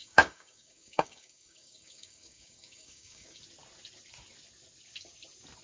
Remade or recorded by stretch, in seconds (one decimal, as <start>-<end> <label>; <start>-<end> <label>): 0.0-3.4 remade; 3.4-5.6 recorded